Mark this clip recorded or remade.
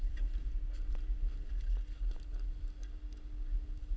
recorded